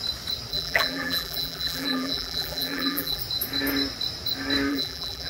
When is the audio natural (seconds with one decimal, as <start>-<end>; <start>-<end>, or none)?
0.0-0.5; 3.2-4.7